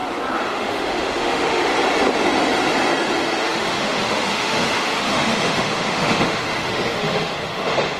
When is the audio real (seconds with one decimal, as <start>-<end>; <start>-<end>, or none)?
0.0-0.5; 1.7-3.4